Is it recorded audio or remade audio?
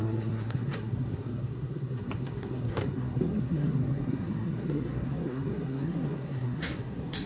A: remade